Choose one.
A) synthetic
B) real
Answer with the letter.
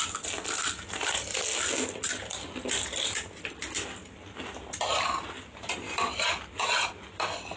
B